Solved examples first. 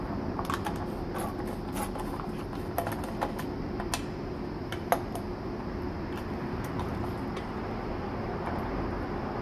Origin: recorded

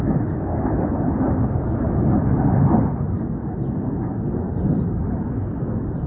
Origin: recorded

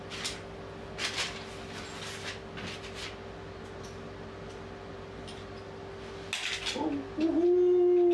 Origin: recorded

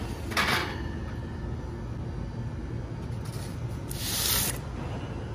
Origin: recorded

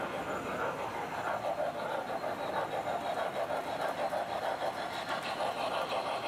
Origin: recorded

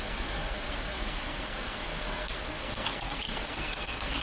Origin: remade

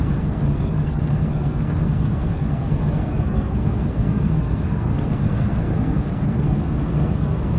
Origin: remade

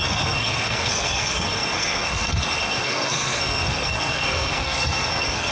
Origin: remade